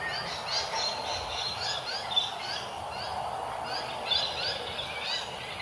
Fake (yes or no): no